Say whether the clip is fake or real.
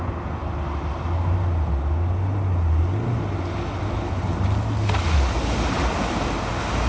real